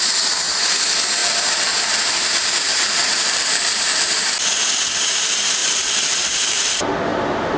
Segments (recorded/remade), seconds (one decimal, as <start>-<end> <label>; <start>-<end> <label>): 0.0-1.2 recorded; 1.2-4.1 remade; 4.1-5.6 recorded; 5.6-6.8 remade; 6.8-7.6 recorded